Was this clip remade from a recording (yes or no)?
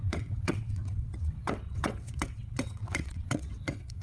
yes